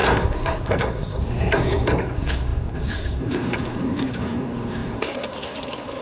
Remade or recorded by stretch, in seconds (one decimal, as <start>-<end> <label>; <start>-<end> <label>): 0.0-6.0 remade